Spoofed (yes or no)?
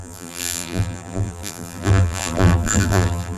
yes